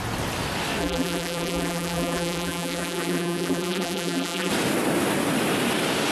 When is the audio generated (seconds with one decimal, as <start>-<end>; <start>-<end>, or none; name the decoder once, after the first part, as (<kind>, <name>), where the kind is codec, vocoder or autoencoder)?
0.8-4.5 (vocoder, BigVGAN v2)

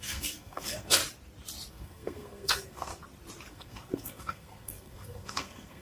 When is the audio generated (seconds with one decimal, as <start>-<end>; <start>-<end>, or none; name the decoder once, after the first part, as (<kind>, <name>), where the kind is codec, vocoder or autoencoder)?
0.0-1.0 (codec, SNAC); 1.7-2.9; 3.5-5.8

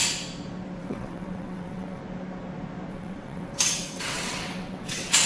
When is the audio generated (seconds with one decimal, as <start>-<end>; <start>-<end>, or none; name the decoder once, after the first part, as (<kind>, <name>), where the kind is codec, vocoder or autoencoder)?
0.8-2.0 (vocoder, WaveNeXt); 2.9-5.3

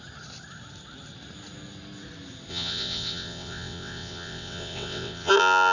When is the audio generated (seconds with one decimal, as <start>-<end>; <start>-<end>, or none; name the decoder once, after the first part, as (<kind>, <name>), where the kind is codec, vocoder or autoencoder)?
2.5-5.3 (vocoder, WaveNeXt)

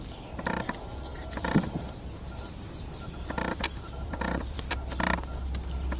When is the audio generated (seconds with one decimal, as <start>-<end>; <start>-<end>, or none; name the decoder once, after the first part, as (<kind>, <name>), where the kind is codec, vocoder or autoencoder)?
1.1-4.7 (vocoder, BigVGAN v2)